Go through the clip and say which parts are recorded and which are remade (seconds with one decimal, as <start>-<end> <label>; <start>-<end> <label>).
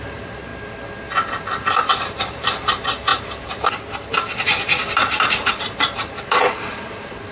0.0-0.5 remade; 0.5-1.8 recorded; 1.8-7.3 remade